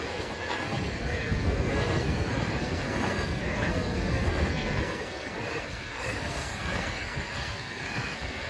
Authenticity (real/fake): fake